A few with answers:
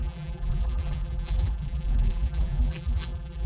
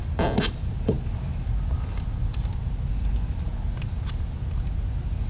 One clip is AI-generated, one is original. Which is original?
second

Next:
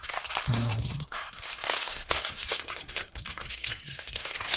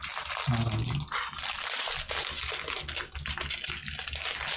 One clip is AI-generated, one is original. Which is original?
second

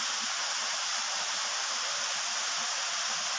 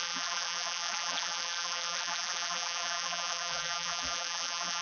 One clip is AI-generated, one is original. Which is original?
first